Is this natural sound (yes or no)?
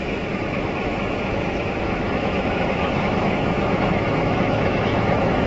no